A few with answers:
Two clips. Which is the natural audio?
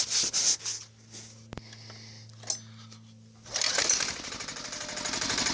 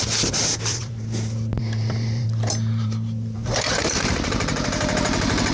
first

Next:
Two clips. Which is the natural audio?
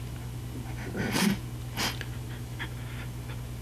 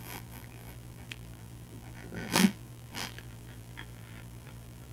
first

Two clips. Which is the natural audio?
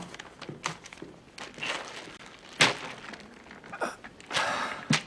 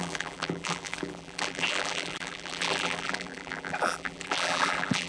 first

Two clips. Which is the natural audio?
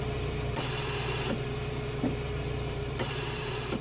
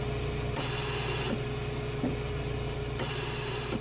second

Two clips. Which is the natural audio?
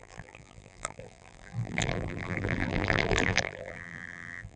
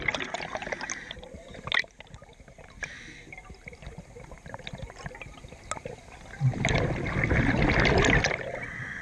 second